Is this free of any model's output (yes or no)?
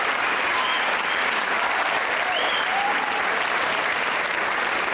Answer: yes